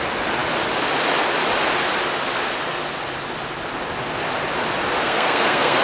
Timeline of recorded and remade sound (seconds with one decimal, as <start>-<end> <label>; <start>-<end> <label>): 0.0-5.0 recorded; 5.0-5.8 remade